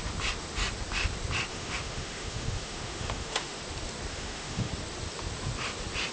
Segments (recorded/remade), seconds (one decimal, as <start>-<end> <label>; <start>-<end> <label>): 0.0-1.5 recorded; 1.5-3.6 remade; 3.6-4.1 recorded; 4.1-4.7 remade; 4.7-6.1 recorded